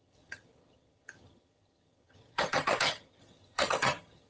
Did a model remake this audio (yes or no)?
yes